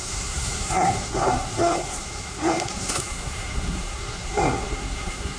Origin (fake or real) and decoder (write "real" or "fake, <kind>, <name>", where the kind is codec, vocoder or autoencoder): fake, codec, SNAC